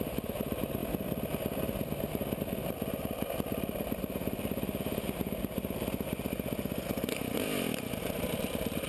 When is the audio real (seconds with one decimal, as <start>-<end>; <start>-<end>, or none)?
0.8-2.4